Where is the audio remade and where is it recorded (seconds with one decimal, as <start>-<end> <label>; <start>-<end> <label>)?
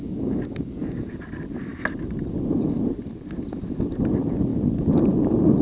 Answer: 0.0-1.1 remade; 1.1-5.6 recorded